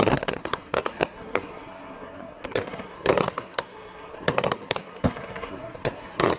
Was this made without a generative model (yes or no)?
no